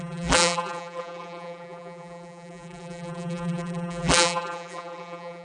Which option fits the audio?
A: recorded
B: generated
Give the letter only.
B